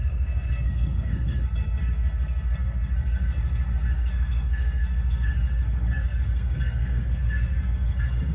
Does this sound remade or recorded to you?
remade